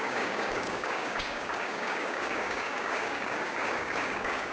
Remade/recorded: remade